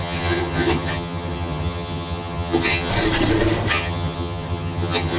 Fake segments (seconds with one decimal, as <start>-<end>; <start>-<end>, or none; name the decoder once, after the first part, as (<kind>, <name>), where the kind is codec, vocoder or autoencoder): 0.0-2.9 (vocoder, HiFi-GAN); 3.7-5.2